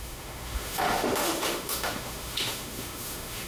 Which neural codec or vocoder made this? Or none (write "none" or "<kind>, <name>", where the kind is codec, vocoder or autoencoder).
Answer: autoencoder, DAC-VAE